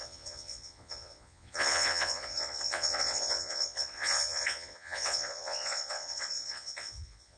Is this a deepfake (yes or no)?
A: yes